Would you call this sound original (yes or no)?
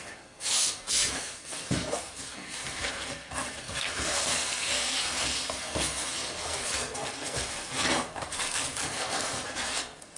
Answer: no